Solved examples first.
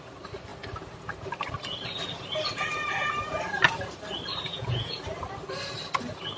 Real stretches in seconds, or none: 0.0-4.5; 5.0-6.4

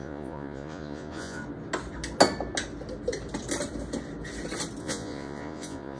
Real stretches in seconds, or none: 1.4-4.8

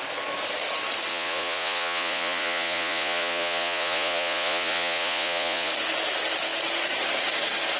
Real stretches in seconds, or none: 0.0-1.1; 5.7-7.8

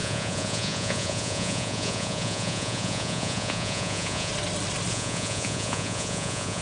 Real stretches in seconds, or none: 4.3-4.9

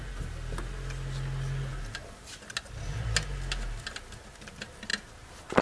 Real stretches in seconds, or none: 0.0-5.6